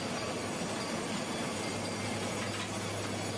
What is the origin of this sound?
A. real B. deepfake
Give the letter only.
A